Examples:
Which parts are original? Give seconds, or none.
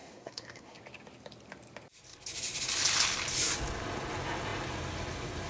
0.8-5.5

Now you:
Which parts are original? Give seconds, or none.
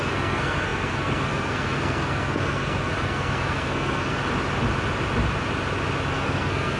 4.2-6.1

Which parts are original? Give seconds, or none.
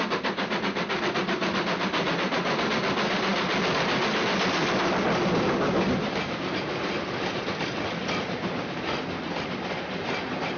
0.0-10.6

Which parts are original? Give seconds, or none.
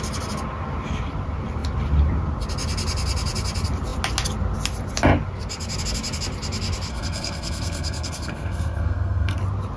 0.0-6.9; 9.4-9.8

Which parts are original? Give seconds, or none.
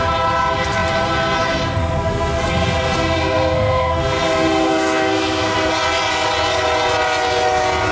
0.0-1.8; 5.7-7.9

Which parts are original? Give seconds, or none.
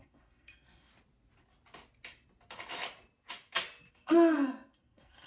0.9-3.9